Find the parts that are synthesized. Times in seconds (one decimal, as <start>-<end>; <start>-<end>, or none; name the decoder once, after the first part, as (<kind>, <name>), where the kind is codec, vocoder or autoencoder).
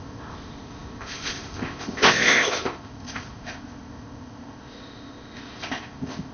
0.0-6.3 (codec, ZipCodec)